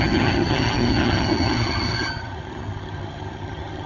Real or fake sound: fake